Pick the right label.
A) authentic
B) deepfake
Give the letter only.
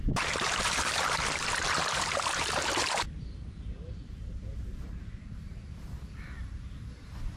B